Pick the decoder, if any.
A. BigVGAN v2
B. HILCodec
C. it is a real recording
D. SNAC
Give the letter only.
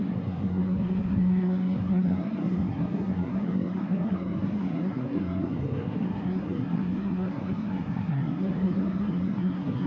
D